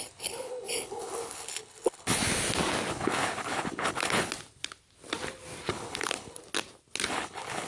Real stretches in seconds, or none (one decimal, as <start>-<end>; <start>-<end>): 2.2-2.9; 4.3-5.7; 6.4-7.1